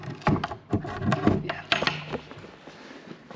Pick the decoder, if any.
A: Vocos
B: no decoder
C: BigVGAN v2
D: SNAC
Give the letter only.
B